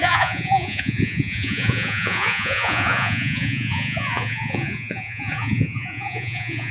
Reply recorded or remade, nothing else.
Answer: remade